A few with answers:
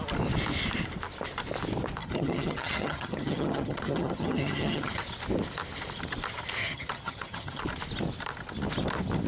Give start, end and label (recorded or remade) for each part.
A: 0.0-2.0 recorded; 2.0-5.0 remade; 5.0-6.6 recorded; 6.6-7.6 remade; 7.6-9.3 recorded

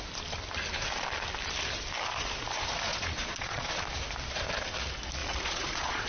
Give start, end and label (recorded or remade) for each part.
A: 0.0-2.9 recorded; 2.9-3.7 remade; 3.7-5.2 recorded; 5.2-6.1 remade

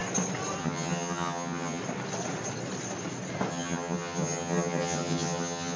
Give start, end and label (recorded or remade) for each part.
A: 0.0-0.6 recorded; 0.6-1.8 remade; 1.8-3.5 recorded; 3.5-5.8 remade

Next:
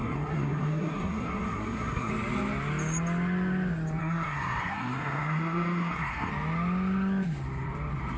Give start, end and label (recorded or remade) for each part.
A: 0.0-2.1 remade; 2.1-4.0 recorded; 4.0-6.3 remade; 6.3-8.2 recorded

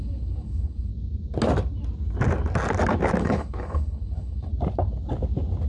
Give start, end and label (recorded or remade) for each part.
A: 0.0-0.9 remade; 0.9-3.2 recorded; 3.2-4.5 remade; 4.5-5.7 recorded